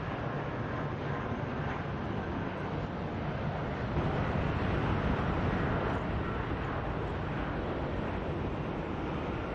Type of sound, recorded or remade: recorded